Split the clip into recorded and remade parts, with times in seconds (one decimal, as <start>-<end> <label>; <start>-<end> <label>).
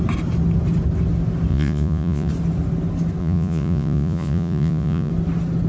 0.0-1.5 recorded; 1.5-2.3 remade; 2.3-3.2 recorded; 3.2-5.1 remade; 5.1-5.7 recorded